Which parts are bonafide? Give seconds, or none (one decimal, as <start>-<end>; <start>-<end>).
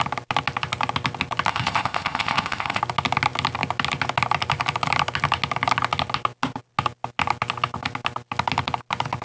0.0-1.5; 2.8-9.2